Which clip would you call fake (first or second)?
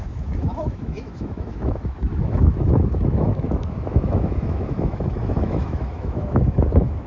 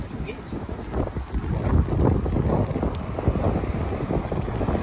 first